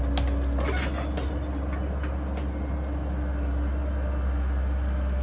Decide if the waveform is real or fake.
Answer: real